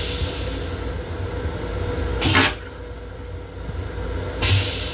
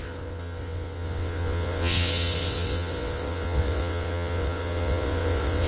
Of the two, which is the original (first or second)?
first